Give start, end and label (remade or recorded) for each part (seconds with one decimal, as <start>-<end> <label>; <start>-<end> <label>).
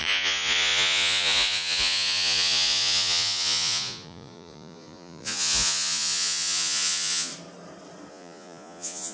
0.0-7.3 remade; 7.3-8.1 recorded; 8.1-9.1 remade